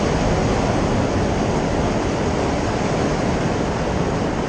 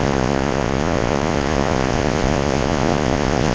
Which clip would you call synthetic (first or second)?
second